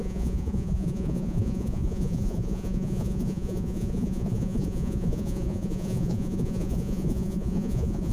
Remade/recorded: remade